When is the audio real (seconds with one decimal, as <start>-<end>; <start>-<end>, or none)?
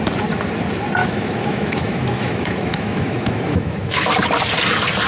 0.0-1.0; 4.1-5.1